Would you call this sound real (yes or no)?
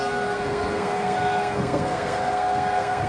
no